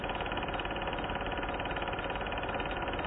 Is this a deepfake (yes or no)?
no